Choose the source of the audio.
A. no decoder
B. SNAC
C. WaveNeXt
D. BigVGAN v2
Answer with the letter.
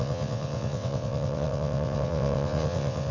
C